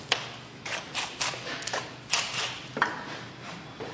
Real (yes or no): yes